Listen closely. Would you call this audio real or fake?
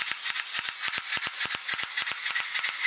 real